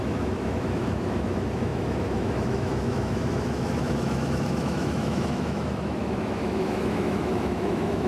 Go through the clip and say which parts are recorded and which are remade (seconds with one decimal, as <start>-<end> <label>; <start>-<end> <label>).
0.0-8.1 remade